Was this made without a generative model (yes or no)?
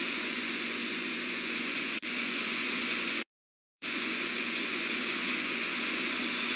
no